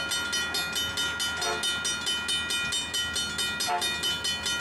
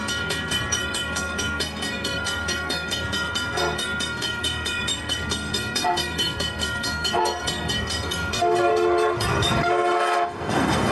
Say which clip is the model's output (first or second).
second